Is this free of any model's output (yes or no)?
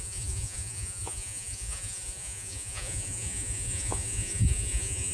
no